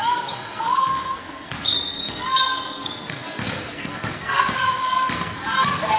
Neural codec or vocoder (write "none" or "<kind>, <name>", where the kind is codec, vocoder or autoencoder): codec, SNAC